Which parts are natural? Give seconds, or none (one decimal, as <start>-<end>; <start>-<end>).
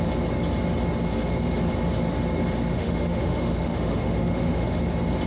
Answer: 0.0-2.7; 4.8-5.3